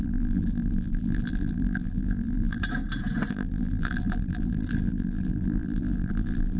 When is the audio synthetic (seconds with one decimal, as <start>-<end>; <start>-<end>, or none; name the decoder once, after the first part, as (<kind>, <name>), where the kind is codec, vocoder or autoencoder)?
0.0-2.6 (vocoder, BigVGAN v2); 3.3-6.6